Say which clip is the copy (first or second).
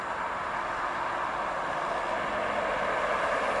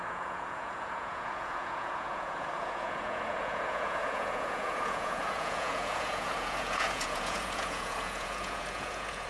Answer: second